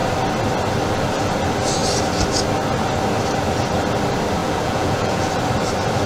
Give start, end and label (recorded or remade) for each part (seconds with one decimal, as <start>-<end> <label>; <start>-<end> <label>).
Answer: 0.0-4.4 recorded; 4.4-5.3 remade; 5.3-6.1 recorded